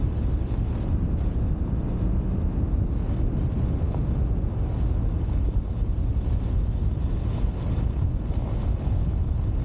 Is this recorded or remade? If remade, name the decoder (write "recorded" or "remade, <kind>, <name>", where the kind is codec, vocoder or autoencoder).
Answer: recorded